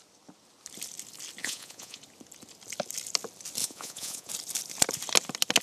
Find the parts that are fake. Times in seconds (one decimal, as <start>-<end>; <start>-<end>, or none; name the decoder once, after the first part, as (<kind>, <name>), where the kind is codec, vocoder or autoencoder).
1.4-2.0 (vocoder, Vocos); 3.6-4.3